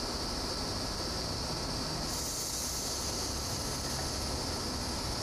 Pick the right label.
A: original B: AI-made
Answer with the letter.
A